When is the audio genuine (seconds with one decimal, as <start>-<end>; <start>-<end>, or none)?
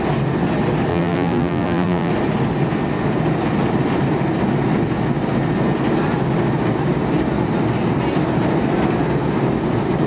0.0-0.9; 2.1-10.1